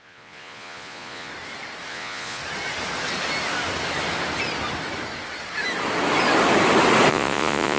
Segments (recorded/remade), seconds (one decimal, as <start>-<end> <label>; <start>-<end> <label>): 0.0-1.3 remade; 1.3-1.9 recorded; 1.9-2.4 remade; 2.4-7.1 recorded; 7.1-7.8 remade